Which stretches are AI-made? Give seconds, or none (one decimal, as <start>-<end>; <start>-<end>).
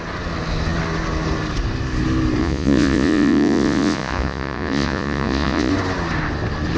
2.4-5.7